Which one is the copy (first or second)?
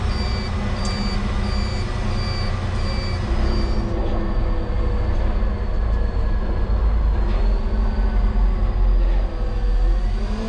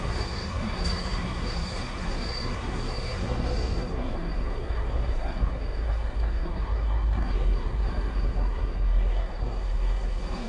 second